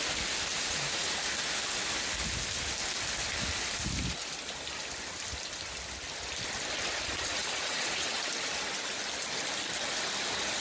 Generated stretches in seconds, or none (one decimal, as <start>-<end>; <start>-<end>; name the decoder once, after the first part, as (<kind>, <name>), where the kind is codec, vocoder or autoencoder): 0.5-1.2 (vocoder, Vocos); 7.3-8.3